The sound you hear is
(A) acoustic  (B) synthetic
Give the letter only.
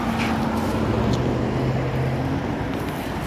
A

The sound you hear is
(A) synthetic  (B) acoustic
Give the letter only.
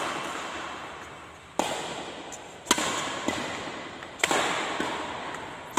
B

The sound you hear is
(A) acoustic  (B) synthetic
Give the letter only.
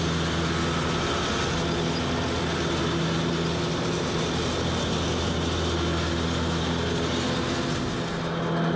A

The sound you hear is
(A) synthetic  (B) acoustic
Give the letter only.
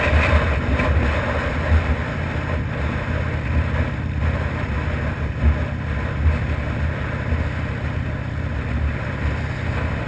B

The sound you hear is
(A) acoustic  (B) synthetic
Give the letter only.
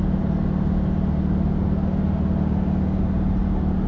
A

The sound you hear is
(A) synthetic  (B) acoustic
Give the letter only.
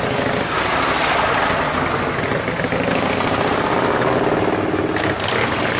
B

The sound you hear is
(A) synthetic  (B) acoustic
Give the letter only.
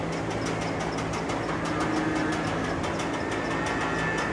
B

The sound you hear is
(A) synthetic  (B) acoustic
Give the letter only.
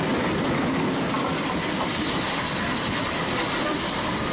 B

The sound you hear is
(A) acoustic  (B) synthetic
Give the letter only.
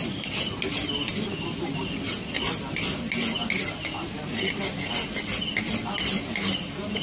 A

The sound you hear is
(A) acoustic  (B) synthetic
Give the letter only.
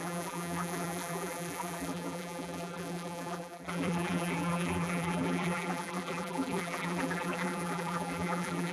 B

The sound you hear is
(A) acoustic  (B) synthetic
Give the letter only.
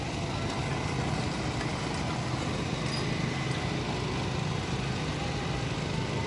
A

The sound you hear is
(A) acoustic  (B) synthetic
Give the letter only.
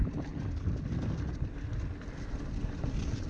A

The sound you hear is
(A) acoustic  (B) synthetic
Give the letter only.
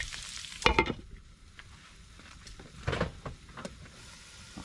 A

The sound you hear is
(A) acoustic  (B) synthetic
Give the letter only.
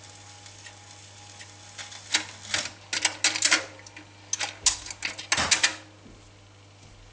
A